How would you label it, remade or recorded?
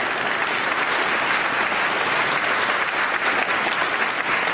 recorded